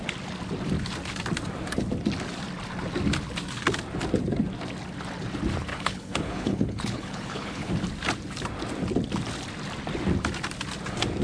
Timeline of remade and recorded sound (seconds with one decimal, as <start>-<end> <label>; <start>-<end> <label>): 0.0-5.7 recorded; 5.7-7.7 remade; 7.7-11.2 recorded